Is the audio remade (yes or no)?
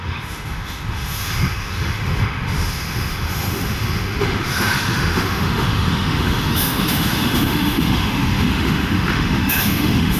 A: yes